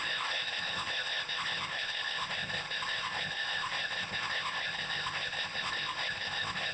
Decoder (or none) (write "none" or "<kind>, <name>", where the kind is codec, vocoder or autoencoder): codec, ZipCodec